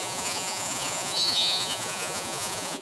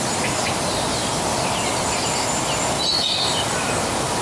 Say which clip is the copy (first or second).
first